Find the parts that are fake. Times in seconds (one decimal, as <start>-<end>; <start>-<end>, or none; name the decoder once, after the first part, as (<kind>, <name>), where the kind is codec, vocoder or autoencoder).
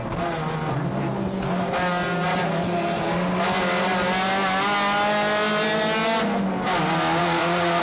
7.2-7.8 (vocoder, Vocos)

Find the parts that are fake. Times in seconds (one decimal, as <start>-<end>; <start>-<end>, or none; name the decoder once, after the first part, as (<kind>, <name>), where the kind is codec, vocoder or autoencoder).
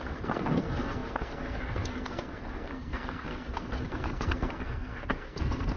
0.0-5.8 (codec, SNAC)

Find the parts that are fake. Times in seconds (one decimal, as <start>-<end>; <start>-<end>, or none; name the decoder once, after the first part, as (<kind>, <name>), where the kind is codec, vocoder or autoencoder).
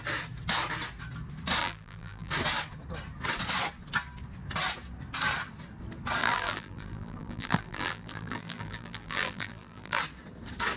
1.6-2.3 (vocoder, BigVGAN v2); 6.2-10.0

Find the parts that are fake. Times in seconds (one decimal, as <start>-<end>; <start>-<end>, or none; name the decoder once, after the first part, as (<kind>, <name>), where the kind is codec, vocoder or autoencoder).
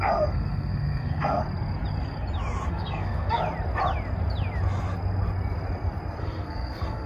0.0-1.4 (codec, SNAC); 2.7-3.4; 6.2-7.1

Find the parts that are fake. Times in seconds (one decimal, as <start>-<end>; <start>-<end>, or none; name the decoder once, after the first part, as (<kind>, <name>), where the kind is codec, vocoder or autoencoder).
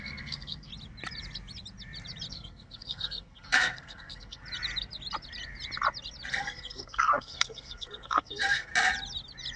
0.0-0.7 (codec, SNAC); 2.3-4.4; 6.3-8.7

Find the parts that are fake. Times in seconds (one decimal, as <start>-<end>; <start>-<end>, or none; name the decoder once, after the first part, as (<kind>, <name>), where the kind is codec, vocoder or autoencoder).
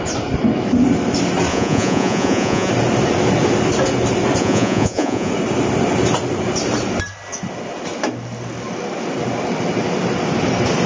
1.5-2.7 (vocoder, Vocos); 4.4-5.3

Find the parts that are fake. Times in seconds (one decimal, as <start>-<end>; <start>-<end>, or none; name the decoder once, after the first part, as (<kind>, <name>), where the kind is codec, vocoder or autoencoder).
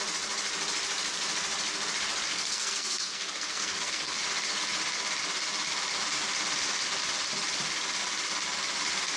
2.3-4.2 (codec, SNAC)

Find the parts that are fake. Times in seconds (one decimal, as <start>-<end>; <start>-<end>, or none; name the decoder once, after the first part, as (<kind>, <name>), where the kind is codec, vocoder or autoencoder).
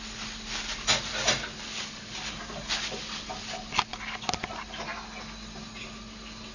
none